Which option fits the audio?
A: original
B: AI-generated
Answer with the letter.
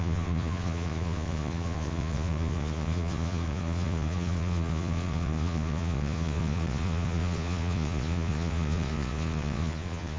B